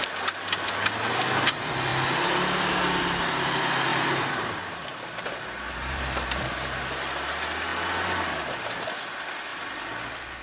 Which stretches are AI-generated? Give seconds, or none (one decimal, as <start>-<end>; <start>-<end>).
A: 3.9-6.8